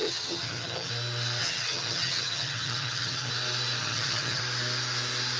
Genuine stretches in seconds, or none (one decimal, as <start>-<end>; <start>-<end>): 0.9-1.4; 3.3-3.8; 4.4-5.4